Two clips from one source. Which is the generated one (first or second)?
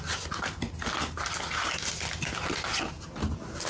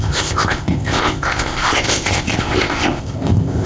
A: second